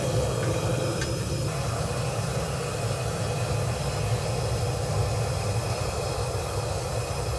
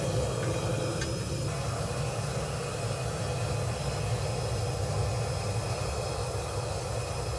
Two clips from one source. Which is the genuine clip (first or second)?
second